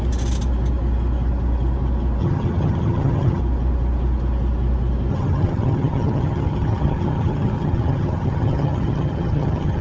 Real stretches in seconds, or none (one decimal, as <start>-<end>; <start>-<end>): 0.0-2.2; 3.4-5.1